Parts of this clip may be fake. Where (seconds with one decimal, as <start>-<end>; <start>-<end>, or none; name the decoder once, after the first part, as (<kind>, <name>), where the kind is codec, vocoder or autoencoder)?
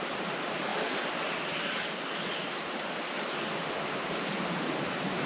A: 0.0-0.7 (vocoder, BigVGAN v2); 3.7-5.3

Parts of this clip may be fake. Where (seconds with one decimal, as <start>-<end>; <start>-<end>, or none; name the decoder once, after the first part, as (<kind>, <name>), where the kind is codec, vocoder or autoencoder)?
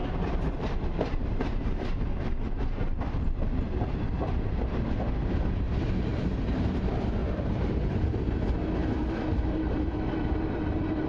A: 0.0-4.6 (vocoder, BigVGAN v2); 6.1-6.8; 7.2-8.2; 8.8-11.1